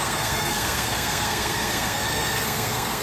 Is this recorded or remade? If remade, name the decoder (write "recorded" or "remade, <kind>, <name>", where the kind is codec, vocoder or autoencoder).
remade, codec, SNAC